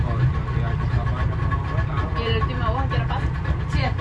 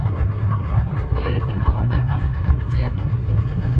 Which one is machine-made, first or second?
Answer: second